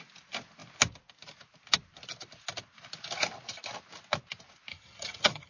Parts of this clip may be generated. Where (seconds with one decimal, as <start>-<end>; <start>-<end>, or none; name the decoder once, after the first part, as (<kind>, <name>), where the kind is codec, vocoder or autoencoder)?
4.7-5.5 (vocoder, HiFi-GAN)